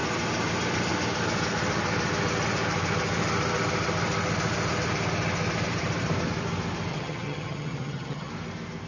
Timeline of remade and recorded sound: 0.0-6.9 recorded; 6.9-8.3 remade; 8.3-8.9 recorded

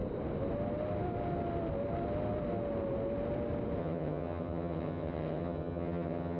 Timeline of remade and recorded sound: 0.0-3.8 recorded; 3.8-6.4 remade

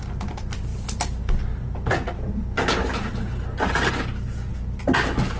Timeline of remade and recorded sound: 0.0-5.4 recorded